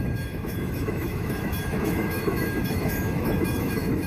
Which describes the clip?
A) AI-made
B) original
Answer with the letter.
A